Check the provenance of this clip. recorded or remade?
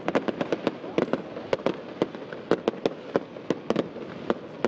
recorded